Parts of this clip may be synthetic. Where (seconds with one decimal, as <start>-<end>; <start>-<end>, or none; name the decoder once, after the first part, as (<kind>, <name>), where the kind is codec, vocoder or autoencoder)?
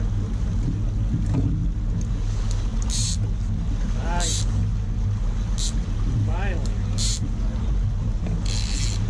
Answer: none